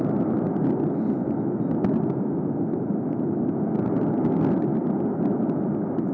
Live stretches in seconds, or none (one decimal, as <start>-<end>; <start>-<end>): 0.0-6.1